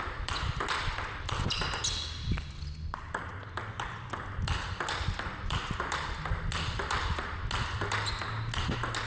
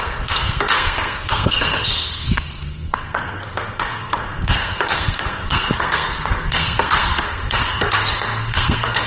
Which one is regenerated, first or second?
second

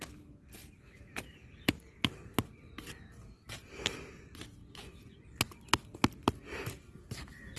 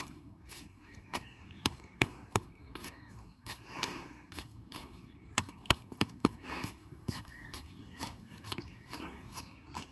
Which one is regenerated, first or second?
second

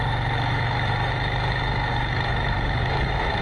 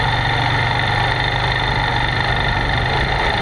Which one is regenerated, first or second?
first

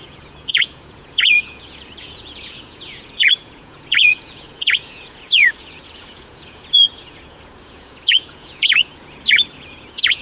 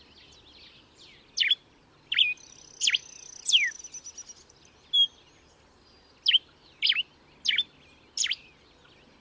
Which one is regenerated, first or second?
first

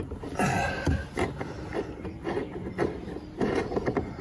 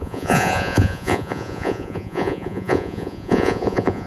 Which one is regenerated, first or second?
second